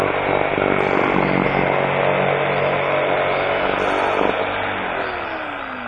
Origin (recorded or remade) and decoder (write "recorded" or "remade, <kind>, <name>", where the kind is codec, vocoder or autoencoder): recorded